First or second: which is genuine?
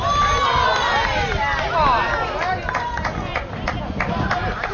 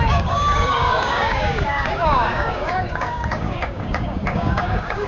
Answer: first